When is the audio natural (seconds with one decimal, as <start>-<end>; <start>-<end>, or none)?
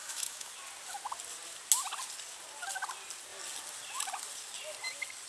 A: 0.5-5.3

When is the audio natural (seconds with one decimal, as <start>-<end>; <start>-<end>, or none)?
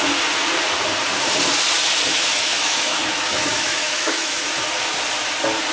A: 0.0-2.1; 4.4-5.7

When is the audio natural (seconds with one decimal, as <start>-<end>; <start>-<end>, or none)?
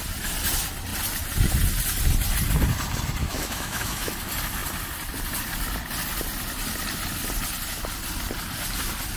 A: 0.0-3.2; 4.1-9.2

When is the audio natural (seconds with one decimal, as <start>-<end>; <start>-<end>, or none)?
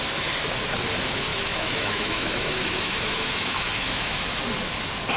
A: 0.0-1.3; 4.4-5.2